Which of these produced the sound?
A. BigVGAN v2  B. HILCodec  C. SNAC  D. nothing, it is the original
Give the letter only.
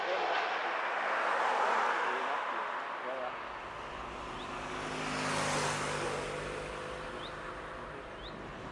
D